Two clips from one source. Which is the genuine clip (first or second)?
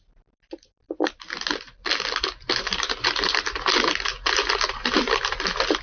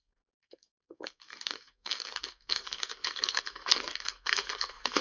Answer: first